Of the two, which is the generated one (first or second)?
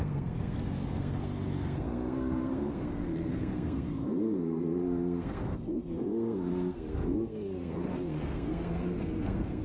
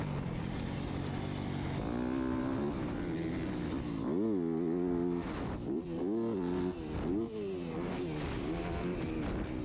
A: first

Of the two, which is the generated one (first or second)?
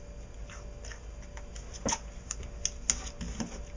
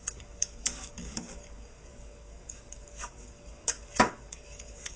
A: second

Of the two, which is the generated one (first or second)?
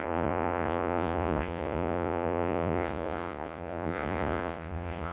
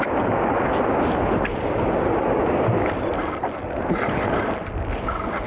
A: first